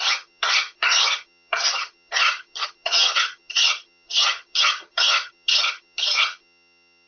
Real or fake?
fake